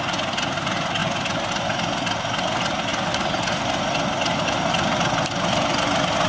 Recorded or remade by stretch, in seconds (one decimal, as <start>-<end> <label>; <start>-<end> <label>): 0.0-6.3 recorded